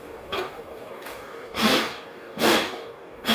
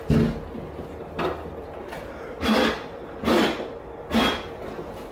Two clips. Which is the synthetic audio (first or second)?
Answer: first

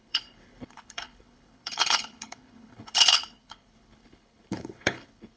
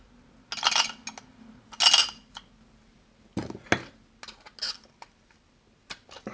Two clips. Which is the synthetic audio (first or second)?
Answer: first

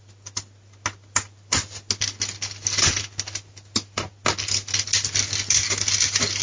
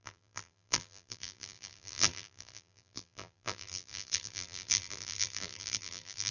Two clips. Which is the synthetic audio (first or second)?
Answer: second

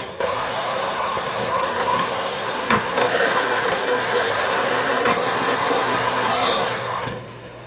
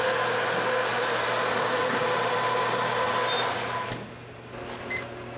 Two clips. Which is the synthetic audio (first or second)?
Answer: first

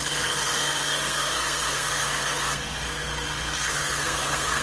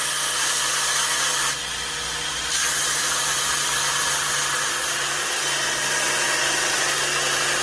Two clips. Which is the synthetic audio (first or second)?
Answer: first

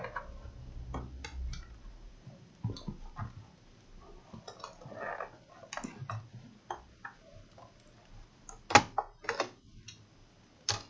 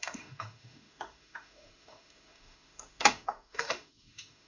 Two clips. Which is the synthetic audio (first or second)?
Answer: second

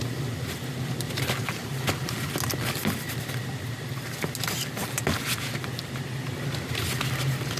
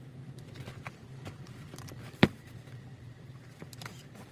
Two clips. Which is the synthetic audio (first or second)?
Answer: second